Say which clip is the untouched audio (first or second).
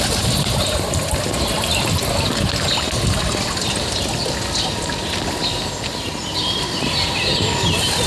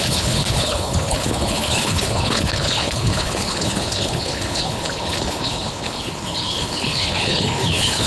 first